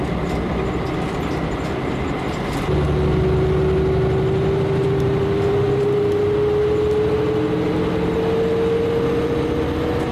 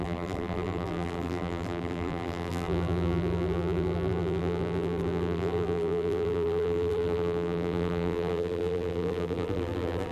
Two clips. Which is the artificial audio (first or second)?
second